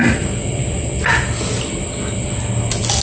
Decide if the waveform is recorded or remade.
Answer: recorded